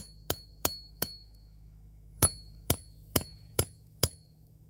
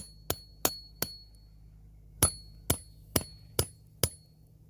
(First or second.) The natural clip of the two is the second